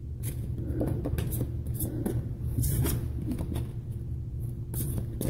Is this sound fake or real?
real